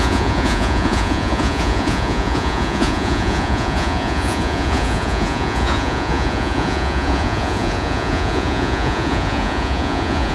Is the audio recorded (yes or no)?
no